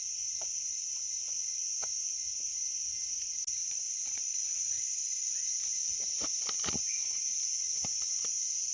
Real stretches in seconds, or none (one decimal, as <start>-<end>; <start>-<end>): 0.0-3.6; 5.5-8.7